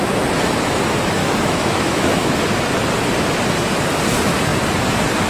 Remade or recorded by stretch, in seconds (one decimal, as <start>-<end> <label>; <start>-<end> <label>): 0.0-1.2 recorded; 1.2-2.4 remade; 2.4-5.3 recorded